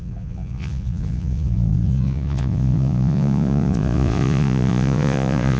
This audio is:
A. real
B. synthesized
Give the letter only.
B